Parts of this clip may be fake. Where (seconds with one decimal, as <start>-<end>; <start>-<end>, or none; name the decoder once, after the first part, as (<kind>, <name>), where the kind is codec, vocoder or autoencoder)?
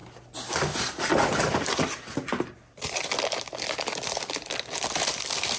none